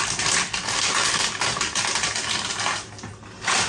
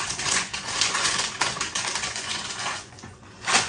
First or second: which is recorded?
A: first